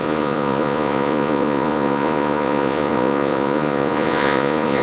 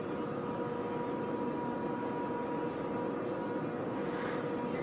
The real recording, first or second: second